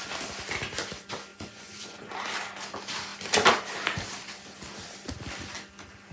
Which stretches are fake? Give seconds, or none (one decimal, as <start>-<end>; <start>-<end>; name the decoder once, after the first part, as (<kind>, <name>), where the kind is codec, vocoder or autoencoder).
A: 1.3-2.1 (vocoder, Vocos)